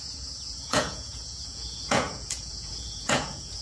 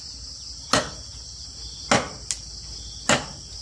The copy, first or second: first